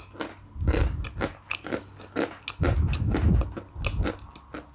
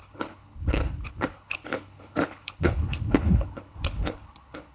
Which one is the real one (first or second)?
first